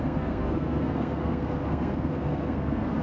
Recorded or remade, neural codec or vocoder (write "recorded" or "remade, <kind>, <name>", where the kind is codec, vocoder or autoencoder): remade, codec, SNAC